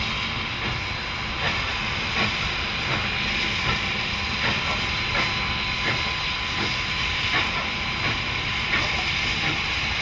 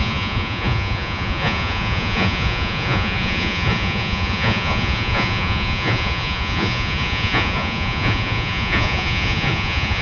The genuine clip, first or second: first